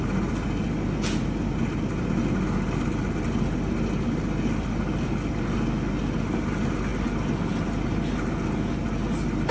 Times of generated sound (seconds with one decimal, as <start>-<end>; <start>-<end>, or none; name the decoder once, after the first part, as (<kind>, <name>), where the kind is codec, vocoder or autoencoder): none